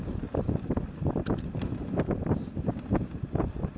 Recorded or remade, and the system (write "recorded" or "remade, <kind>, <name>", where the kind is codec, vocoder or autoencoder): recorded